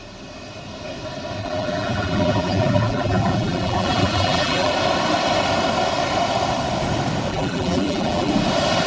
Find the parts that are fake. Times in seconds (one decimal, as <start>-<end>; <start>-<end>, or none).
1.4-4.7; 7.3-8.3